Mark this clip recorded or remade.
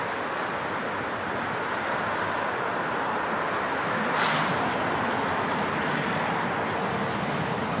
recorded